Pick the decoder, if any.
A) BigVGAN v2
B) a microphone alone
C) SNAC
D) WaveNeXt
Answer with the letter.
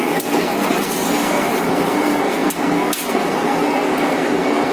C